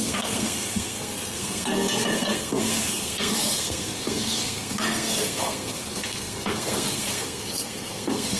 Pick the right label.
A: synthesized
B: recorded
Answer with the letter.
A